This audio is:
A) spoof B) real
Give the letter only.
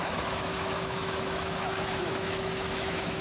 A